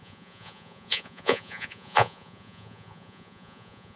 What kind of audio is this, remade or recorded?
remade